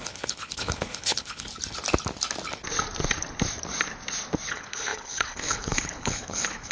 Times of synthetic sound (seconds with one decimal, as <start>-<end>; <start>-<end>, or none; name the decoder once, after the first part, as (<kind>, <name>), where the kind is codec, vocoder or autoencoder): 0.0-1.5 (codec, HILCodec); 4.5-6.7